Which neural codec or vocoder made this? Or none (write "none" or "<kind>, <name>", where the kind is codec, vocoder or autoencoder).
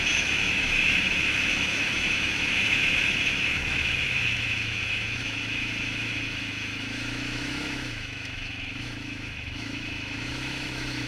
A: autoencoder, DAC-VAE